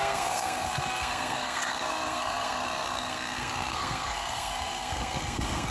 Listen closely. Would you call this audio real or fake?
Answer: fake